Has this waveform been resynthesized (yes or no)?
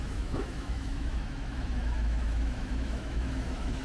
yes